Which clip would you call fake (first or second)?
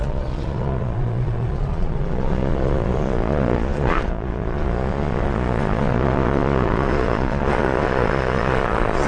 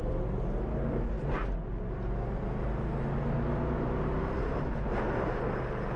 first